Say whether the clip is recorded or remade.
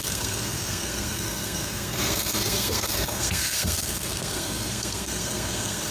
remade